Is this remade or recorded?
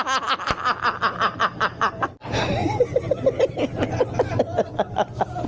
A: recorded